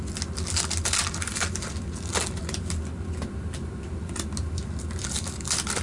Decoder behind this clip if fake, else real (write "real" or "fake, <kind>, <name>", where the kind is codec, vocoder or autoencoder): real